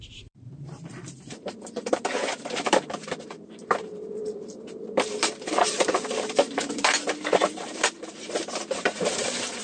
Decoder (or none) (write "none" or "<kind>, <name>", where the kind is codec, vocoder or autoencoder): vocoder, BigVGAN v2